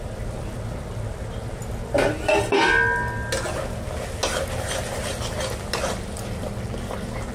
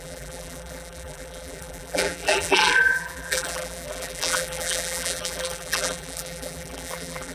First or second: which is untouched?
first